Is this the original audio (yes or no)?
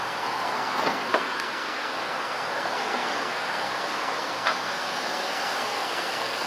no